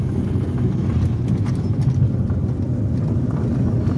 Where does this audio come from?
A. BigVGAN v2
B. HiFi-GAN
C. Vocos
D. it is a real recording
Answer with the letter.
D